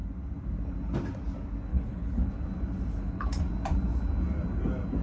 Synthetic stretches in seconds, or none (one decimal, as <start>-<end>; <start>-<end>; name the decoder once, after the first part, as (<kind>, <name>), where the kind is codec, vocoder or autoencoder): 1.7-2.3 (codec, HILCodec); 2.9-3.4